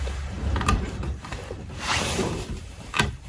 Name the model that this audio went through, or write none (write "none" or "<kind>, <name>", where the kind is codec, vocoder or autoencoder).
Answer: vocoder, BigVGAN v2